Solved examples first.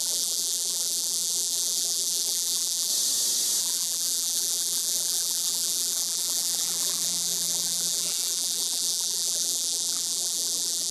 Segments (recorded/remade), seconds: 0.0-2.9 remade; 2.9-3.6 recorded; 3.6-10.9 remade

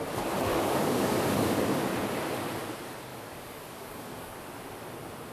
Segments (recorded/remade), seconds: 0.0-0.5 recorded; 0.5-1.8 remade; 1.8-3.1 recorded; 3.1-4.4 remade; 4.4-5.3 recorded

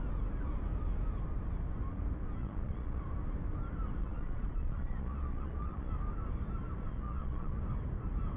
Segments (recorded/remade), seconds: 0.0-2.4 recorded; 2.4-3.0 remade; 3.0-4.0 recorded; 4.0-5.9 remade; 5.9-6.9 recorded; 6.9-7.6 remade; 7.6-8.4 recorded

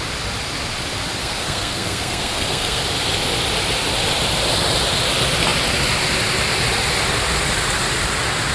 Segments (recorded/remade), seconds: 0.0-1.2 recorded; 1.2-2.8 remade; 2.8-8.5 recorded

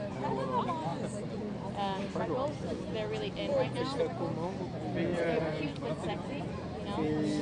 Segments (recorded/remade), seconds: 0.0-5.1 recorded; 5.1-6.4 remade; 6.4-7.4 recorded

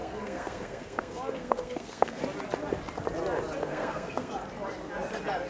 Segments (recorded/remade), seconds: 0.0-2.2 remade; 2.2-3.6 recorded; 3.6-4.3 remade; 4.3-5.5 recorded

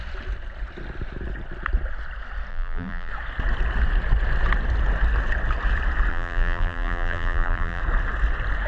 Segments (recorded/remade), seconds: 0.0-2.5 recorded; 2.5-3.1 remade; 3.1-6.1 recorded; 6.1-7.8 remade; 7.8-8.7 recorded

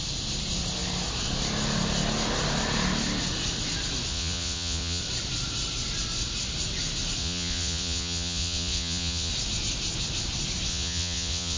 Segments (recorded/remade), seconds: 0.0-4.1 recorded; 4.1-5.0 remade; 5.0-7.2 recorded; 7.2-9.3 remade; 9.3-10.7 recorded; 10.7-11.6 remade